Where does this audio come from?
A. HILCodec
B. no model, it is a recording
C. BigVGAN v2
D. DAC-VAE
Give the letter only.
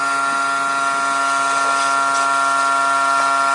B